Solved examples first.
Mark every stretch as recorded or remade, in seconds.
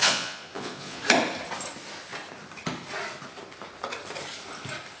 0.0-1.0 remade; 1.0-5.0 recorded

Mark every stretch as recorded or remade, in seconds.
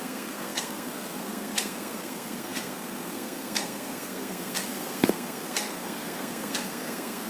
0.0-7.3 remade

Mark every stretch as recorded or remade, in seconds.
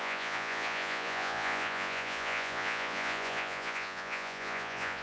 0.0-5.0 remade